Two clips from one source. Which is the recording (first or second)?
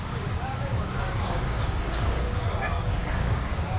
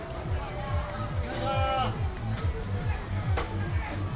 second